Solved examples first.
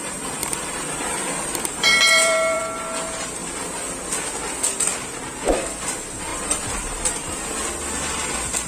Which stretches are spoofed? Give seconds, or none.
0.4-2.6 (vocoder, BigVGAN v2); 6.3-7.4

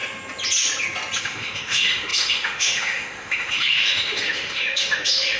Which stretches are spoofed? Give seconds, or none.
1.2-5.4 (autoencoder, DAC-VAE)

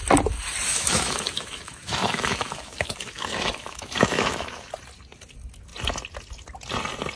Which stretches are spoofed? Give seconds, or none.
0.7-4.7 (autoencoder, DAC-VAE)

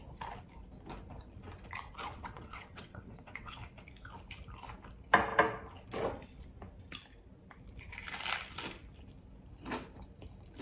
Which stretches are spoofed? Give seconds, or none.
2.1-3.5 (vocoder, WaveNeXt)

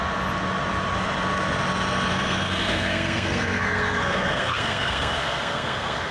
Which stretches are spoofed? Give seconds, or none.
2.1-6.1 (codec, SNAC)

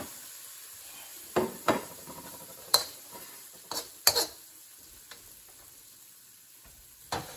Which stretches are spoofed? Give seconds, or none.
1.1-3.5 (vocoder, BigVGAN v2)